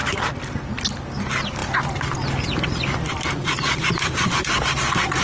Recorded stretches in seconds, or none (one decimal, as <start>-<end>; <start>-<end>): 0.0-5.2